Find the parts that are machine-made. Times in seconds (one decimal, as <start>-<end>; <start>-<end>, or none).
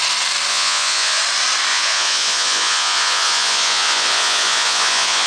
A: 0.5-1.2; 1.7-5.3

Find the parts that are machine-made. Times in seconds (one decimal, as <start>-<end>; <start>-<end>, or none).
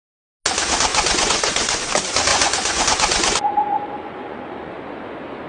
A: 0.9-1.8; 2.3-4.8